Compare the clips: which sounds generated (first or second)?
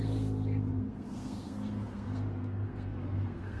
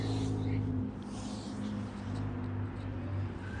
first